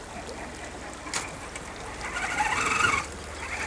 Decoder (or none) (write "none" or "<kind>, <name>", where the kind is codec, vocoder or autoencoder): none